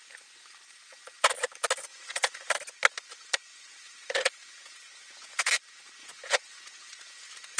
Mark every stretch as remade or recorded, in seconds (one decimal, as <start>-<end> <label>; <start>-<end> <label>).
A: 0.0-1.9 recorded; 1.9-2.5 remade; 2.5-3.5 recorded; 3.5-5.5 remade; 5.5-6.0 recorded; 6.0-7.6 remade

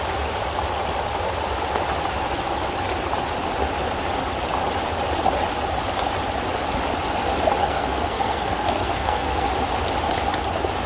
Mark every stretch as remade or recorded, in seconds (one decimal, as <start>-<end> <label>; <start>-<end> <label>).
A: 0.0-7.6 recorded; 7.6-9.5 remade; 9.5-10.9 recorded

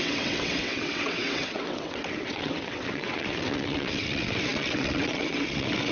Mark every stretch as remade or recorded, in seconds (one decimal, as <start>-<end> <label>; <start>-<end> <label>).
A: 0.0-5.9 remade

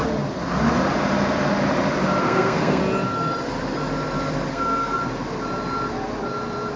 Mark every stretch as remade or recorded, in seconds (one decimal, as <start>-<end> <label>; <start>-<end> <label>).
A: 0.0-2.2 recorded; 2.2-2.8 remade; 2.8-4.5 recorded; 4.5-5.0 remade; 5.0-6.8 recorded